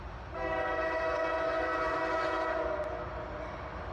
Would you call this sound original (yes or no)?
yes